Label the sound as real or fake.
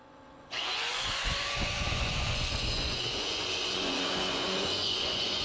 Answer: fake